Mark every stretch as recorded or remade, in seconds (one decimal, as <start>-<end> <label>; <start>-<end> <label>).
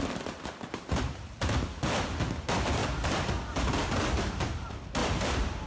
0.0-2.8 recorded; 2.8-3.3 remade; 3.3-5.0 recorded; 5.0-5.7 remade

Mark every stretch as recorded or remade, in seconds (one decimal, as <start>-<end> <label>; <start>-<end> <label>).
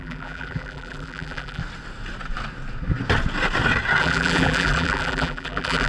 0.0-1.6 remade; 1.6-4.0 recorded; 4.0-5.9 remade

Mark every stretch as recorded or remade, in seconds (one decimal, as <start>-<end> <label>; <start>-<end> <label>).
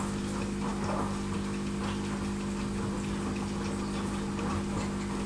0.0-5.3 recorded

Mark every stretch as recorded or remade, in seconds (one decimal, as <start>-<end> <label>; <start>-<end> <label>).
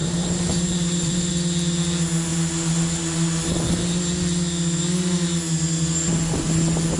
0.0-1.3 remade; 1.3-7.0 recorded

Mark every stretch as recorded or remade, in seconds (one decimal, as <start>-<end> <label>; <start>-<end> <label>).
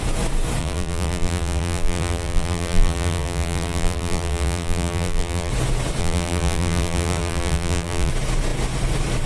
0.0-0.6 recorded; 0.6-5.5 remade; 5.5-6.0 recorded; 6.0-8.1 remade; 8.1-9.3 recorded